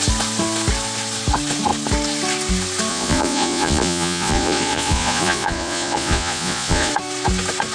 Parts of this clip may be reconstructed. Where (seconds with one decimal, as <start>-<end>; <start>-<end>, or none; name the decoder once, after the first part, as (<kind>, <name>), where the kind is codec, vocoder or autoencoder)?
2.9-6.9 (vocoder, Vocos)